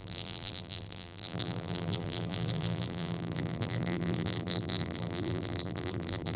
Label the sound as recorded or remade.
remade